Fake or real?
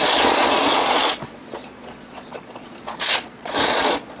fake